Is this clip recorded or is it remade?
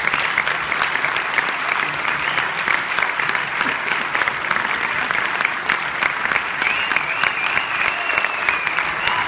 recorded